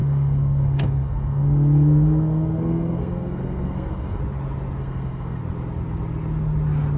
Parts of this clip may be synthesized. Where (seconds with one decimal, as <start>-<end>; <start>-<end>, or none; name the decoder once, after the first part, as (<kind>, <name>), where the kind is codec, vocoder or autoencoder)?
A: 0.0-4.2 (codec, SNAC); 4.8-5.4